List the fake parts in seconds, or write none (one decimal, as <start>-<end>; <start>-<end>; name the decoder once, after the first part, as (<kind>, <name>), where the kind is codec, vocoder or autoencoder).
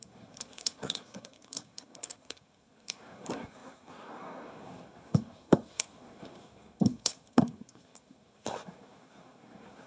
0.0-9.9 (codec, SNAC)